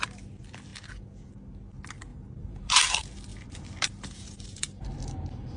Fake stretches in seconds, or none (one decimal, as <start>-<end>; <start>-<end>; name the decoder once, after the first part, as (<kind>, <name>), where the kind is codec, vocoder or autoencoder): 2.1-2.8 (vocoder, BigVGAN v2); 3.3-5.6